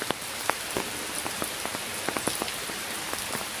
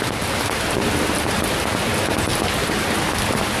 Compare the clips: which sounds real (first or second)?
second